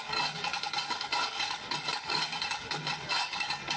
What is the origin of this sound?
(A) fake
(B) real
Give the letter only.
A